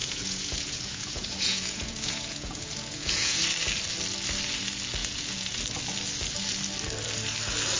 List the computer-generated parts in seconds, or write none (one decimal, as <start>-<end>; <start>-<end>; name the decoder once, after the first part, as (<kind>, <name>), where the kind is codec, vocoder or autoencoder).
0.0-3.4 (vocoder, Vocos); 5.0-5.6